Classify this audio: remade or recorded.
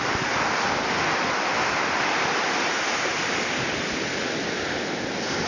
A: recorded